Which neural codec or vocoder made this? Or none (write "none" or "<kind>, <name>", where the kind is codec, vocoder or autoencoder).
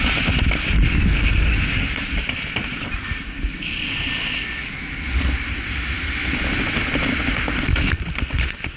none